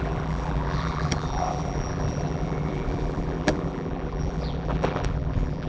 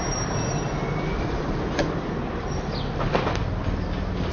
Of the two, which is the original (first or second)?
second